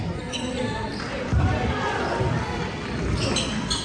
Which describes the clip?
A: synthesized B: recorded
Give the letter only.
B